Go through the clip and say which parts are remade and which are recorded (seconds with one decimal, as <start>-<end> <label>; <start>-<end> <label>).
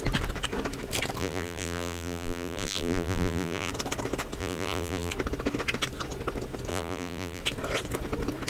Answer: 0.0-1.2 recorded; 1.2-3.7 remade; 3.7-4.4 recorded; 4.4-5.1 remade; 5.1-6.7 recorded; 6.7-7.4 remade; 7.4-8.5 recorded